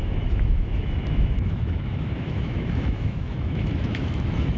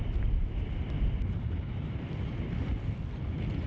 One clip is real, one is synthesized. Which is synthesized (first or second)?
first